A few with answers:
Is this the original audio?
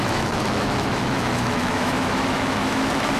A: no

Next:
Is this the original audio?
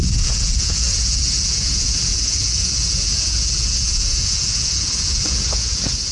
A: no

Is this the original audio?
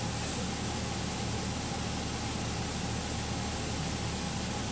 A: yes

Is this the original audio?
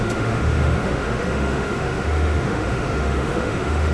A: no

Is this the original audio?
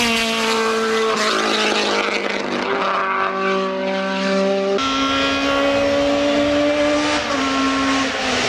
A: yes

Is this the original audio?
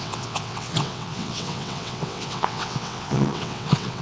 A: no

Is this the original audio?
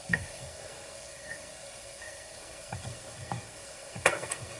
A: no